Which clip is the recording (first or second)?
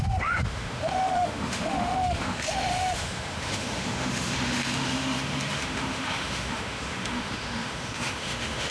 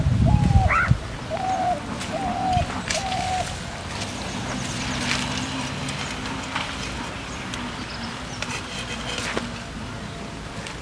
second